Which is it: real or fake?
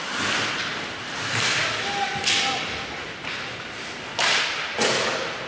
real